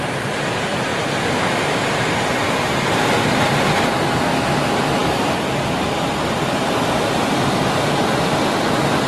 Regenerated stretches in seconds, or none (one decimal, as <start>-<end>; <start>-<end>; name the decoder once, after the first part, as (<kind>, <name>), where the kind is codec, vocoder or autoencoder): none